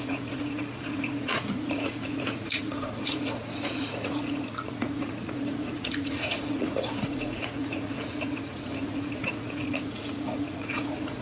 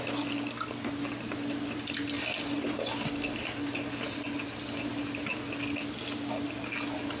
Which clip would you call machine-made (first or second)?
first